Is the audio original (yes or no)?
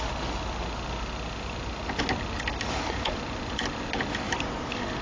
yes